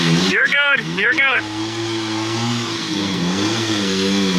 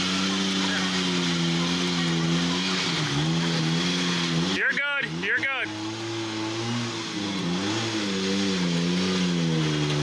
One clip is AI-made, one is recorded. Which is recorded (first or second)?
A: second